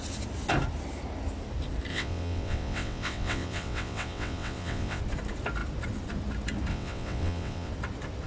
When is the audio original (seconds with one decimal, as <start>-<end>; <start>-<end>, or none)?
0.0-1.9; 5.0-6.7; 7.7-8.3